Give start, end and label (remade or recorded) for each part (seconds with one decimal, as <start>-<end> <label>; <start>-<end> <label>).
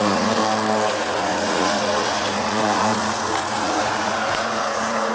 0.0-0.4 remade; 0.4-0.9 recorded; 0.9-5.1 remade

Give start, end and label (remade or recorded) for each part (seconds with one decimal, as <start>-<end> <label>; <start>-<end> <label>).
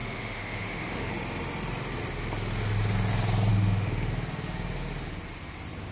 0.0-1.1 remade; 1.1-3.5 recorded; 3.5-4.1 remade; 4.1-5.9 recorded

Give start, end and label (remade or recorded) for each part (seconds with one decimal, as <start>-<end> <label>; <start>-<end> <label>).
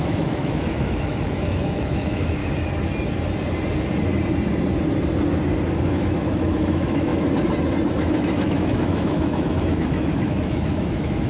0.0-2.4 remade; 2.4-5.8 recorded; 5.8-7.1 remade; 7.1-8.0 recorded; 8.0-11.3 remade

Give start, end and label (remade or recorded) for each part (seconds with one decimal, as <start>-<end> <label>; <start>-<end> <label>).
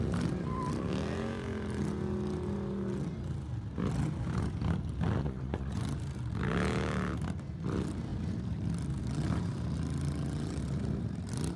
0.0-5.2 recorded; 5.2-5.8 remade; 5.8-11.6 recorded